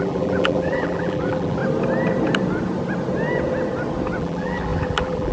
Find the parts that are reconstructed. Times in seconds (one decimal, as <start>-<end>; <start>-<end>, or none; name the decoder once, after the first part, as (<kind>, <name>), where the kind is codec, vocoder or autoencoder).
0.0-1.6 (vocoder, BigVGAN v2); 4.2-5.3